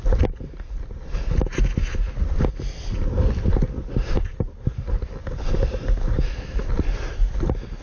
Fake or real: real